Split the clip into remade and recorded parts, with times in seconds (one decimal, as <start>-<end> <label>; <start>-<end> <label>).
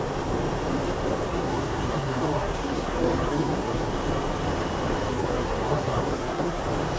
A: 0.0-1.3 recorded; 1.3-3.9 remade; 3.9-5.1 recorded; 5.1-6.6 remade; 6.6-7.0 recorded